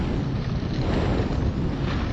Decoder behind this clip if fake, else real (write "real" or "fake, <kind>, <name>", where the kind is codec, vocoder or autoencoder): real